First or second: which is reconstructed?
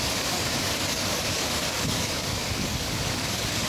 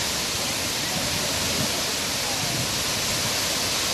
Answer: first